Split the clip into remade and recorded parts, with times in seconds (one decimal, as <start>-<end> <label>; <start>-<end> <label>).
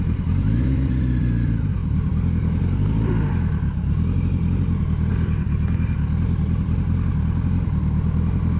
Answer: 0.0-8.6 recorded